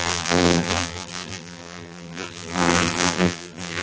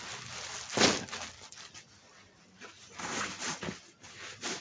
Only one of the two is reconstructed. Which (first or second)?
first